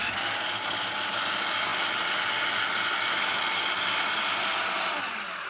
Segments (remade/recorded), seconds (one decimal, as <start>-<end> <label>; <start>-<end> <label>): 0.0-5.5 recorded